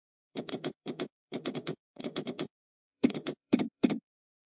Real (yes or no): no